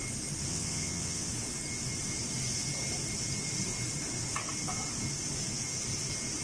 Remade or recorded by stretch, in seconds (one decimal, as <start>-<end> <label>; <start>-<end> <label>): 0.0-0.5 recorded; 0.5-1.3 remade; 1.3-6.4 recorded